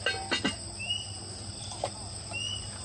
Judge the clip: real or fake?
real